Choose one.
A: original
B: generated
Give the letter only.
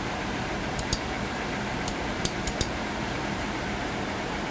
B